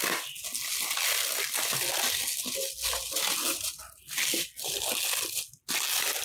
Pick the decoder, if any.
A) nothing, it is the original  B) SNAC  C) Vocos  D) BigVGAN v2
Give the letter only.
A